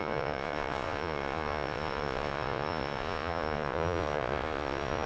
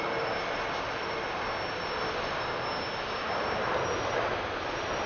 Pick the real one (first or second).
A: second